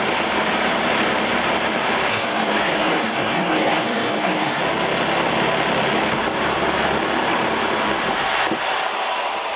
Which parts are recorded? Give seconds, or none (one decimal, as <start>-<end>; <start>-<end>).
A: 0.0-2.1; 4.6-9.6